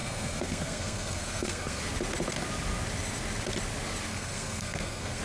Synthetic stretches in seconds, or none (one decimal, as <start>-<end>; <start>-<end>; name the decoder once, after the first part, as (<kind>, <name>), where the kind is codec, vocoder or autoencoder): 0.0-1.8 (codec, SNAC); 4.1-5.2